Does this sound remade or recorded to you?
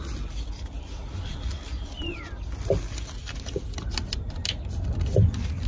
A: recorded